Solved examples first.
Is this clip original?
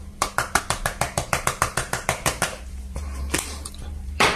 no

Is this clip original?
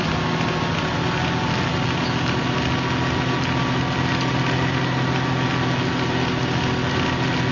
yes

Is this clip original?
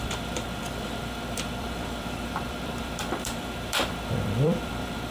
no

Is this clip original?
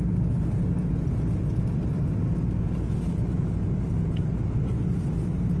yes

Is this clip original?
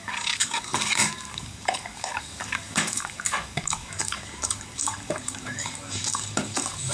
no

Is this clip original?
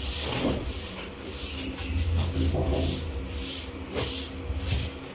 yes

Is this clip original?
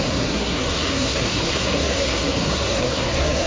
no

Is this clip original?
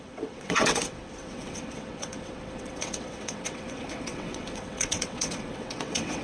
no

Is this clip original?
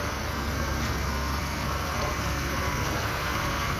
no